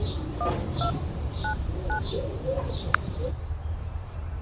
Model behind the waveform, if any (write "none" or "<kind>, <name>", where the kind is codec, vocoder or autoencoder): vocoder, BigVGAN v2